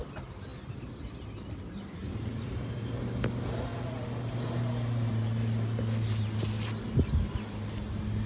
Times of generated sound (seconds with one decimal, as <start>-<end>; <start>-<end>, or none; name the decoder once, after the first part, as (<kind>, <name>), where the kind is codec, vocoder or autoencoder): 2.0-3.0 (vocoder, BigVGAN v2)